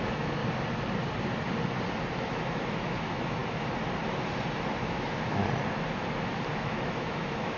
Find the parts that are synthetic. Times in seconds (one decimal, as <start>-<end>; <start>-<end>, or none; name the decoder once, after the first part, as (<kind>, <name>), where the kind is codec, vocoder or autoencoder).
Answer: 0.0-0.4 (autoencoder, DAC-VAE); 2.2-3.4; 4.7-5.4; 6.5-7.6